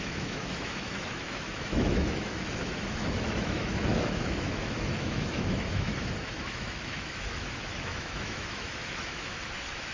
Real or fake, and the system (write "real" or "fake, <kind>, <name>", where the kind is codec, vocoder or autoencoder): fake, autoencoder, DAC-VAE